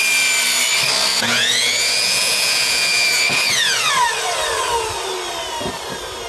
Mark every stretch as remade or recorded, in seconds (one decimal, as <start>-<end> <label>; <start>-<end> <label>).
0.0-1.1 recorded; 1.1-3.9 remade; 3.9-6.3 recorded